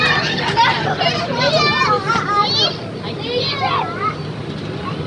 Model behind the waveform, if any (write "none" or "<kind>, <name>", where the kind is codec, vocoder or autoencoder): none